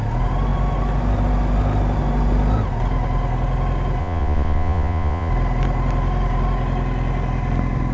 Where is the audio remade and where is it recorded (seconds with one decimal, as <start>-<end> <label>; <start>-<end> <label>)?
0.0-4.0 recorded; 4.0-5.3 remade; 5.3-7.9 recorded